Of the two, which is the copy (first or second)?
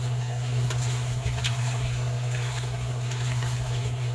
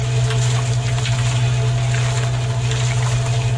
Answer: first